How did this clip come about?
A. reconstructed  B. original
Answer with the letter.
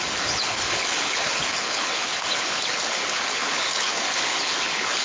A